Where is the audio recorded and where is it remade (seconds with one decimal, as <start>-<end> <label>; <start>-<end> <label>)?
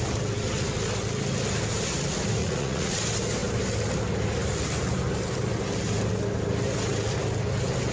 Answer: 0.0-2.4 recorded; 2.4-3.0 remade; 3.0-7.9 recorded